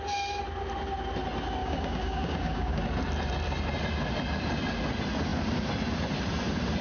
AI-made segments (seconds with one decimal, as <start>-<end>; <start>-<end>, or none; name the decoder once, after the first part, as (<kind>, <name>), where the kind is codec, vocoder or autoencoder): 1.6-2.8 (codec, DAC)